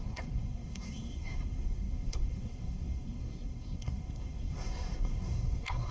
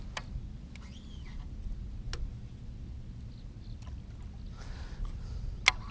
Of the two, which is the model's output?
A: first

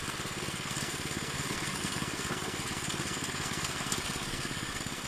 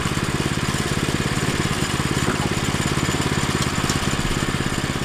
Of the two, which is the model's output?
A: first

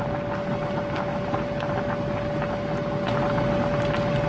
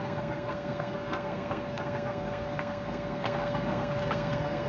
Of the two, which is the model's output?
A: second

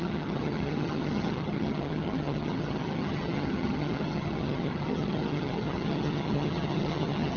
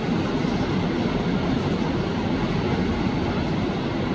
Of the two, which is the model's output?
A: first